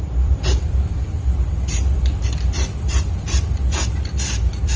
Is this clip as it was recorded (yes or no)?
no